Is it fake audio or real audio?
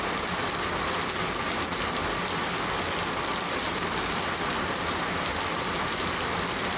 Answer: real